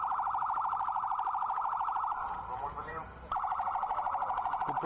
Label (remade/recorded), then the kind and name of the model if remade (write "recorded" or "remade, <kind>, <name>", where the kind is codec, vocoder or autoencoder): remade, vocoder, BigVGAN v2